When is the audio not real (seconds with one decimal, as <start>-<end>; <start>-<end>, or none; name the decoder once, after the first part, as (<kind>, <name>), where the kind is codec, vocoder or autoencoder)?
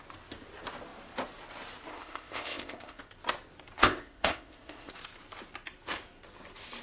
1.9-3.0 (codec, ZipCodec); 3.8-4.9